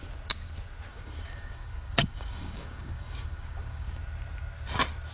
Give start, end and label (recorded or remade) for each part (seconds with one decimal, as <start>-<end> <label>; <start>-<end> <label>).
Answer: 0.0-0.9 recorded; 0.9-4.0 remade; 4.0-5.1 recorded